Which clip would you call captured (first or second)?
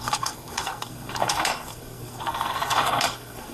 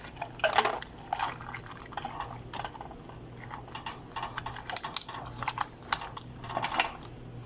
second